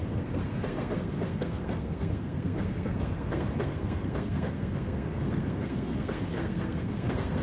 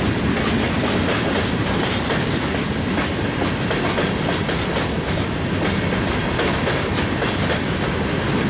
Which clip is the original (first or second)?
second